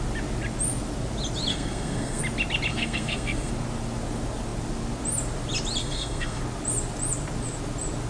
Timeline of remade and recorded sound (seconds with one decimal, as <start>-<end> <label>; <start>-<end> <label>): 0.0-1.5 recorded; 1.5-2.2 remade; 2.2-2.7 recorded; 2.7-3.5 remade; 3.5-5.8 recorded; 5.8-6.4 remade; 6.4-8.1 recorded